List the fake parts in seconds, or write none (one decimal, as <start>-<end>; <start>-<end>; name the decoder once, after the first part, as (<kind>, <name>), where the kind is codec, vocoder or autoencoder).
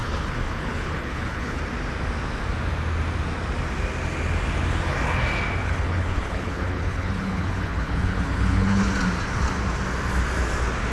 0.0-1.6 (codec, HILCodec); 5.6-8.9